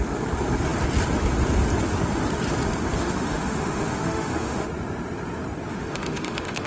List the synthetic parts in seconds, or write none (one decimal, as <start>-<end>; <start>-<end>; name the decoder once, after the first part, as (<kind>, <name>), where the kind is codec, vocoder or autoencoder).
3.0-4.7 (autoencoder, DAC-VAE); 5.7-6.7